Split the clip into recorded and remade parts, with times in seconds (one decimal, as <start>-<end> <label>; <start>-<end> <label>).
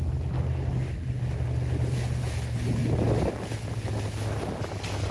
0.0-5.1 recorded